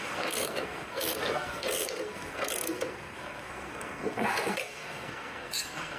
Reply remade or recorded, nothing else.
remade